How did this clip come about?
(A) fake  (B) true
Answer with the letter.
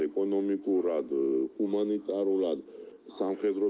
B